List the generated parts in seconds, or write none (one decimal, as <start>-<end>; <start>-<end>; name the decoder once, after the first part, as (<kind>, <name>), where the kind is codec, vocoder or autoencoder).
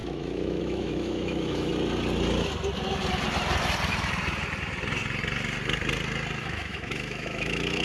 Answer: 0.0-1.7 (autoencoder, DAC-VAE); 6.4-7.8